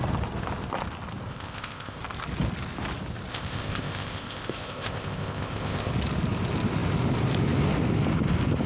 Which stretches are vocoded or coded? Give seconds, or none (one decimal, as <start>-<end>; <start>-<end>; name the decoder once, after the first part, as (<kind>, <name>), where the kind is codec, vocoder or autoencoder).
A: 1.3-2.0 (codec, ZipCodec); 3.3-5.9

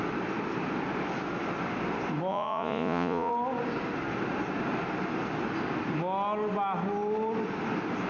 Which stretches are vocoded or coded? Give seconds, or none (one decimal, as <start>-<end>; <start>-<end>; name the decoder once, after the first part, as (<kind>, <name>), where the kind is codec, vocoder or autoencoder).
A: 2.3-3.3 (vocoder, Vocos)

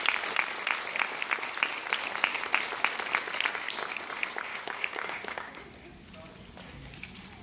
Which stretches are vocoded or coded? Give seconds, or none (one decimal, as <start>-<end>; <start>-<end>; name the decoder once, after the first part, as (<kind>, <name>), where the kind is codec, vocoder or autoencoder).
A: 4.5-5.6 (codec, DAC)